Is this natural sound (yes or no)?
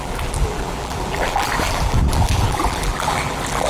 no